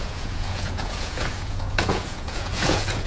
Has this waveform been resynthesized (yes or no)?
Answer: yes